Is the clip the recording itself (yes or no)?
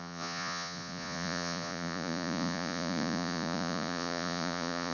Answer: no